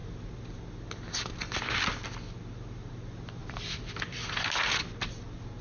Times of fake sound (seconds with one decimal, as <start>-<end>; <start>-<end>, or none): 3.4-4.3